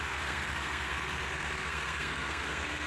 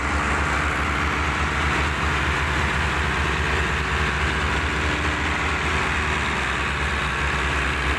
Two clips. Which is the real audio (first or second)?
second